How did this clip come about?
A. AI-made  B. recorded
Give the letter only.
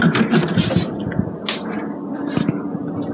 B